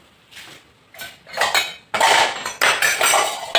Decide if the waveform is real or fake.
real